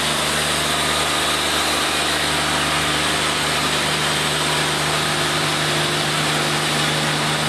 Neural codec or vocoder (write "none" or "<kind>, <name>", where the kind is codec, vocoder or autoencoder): none